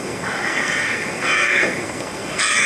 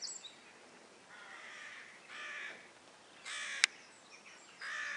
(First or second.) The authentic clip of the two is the second